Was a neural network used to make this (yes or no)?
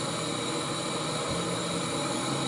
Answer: no